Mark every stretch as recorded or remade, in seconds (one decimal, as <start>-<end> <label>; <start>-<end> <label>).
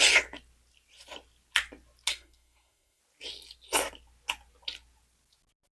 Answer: 0.0-2.1 recorded; 2.1-3.0 remade; 3.0-5.8 recorded